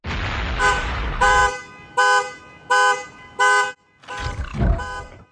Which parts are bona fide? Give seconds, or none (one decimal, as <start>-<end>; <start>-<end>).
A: 0.0-0.6; 1.4-4.6